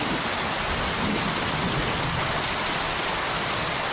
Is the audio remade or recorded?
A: recorded